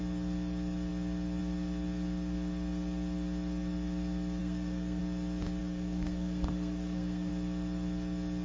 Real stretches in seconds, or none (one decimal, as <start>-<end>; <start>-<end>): 0.0-4.4; 5.0-5.6; 7.3-8.4